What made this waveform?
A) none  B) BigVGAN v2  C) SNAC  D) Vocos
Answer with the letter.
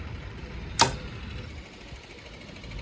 A